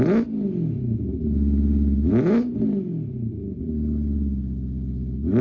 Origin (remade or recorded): recorded